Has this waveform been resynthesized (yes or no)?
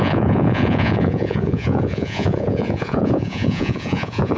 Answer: yes